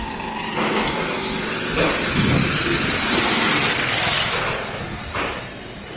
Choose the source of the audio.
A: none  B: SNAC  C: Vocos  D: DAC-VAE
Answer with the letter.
A